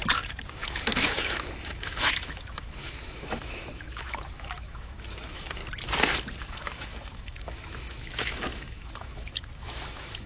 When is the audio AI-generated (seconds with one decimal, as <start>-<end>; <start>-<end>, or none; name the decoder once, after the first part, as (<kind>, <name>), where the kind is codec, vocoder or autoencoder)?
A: 0.5-5.6 (autoencoder, DAC-VAE); 6.4-10.3